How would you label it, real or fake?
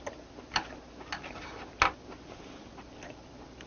real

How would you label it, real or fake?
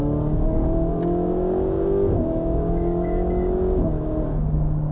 fake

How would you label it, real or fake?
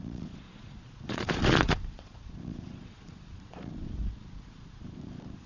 fake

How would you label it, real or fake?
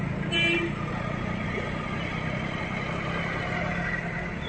real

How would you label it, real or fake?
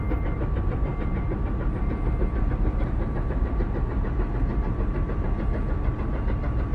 real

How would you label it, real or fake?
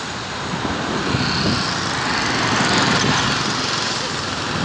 real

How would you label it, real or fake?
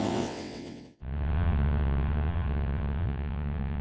fake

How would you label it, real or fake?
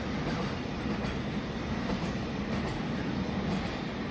real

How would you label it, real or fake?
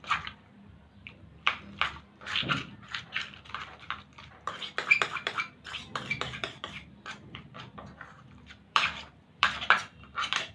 fake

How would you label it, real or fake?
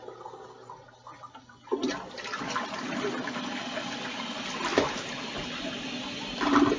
real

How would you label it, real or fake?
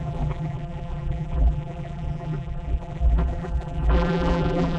fake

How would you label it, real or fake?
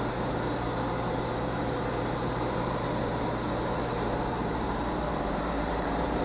fake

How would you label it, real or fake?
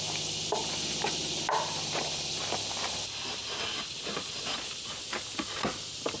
real